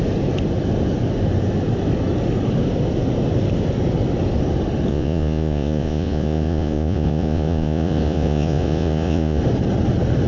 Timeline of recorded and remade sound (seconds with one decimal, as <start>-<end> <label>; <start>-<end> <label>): 0.0-4.9 recorded; 4.9-9.4 remade; 9.4-10.3 recorded